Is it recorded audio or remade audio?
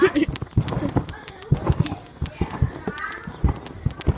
recorded